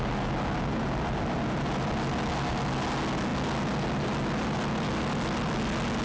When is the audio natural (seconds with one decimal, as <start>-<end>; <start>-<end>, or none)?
0.0-6.0